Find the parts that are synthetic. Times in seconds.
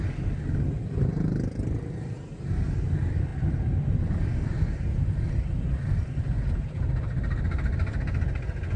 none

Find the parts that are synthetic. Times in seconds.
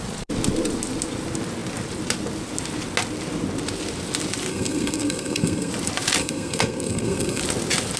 4.5-5.7 (codec, SNAC); 6.2-7.4